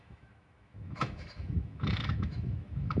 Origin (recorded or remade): remade